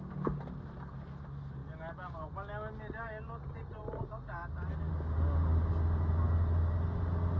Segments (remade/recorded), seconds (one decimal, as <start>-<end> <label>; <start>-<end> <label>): 0.0-3.8 recorded; 3.8-4.9 remade; 4.9-7.4 recorded